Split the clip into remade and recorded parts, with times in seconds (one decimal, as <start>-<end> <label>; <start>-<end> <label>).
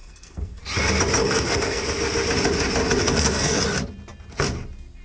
0.0-0.6 remade; 0.6-1.2 recorded; 1.2-1.8 remade; 1.8-3.0 recorded; 3.0-3.6 remade; 3.6-5.0 recorded